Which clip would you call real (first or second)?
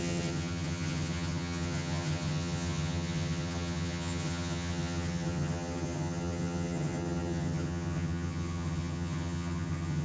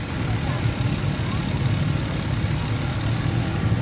second